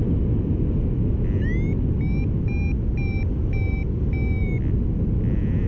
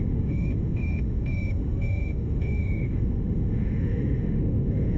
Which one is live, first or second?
first